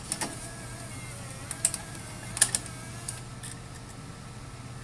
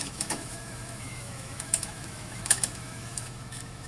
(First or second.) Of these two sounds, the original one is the first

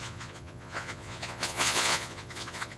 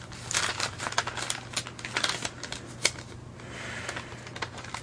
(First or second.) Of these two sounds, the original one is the second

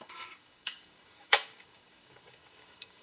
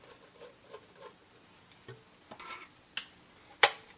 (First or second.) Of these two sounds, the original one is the second